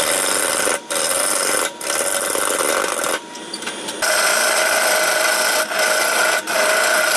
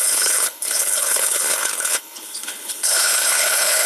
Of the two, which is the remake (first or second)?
second